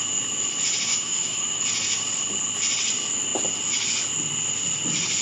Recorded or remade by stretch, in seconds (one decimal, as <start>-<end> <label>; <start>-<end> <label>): 0.0-0.9 recorded; 0.9-1.6 remade; 1.6-5.2 recorded